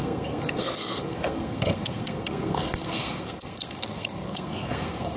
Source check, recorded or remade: remade